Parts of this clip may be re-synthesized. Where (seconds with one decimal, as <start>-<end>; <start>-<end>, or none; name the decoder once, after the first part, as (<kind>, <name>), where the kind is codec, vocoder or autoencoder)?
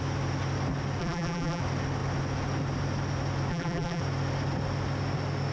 1.0-1.6 (vocoder, BigVGAN v2); 3.5-4.0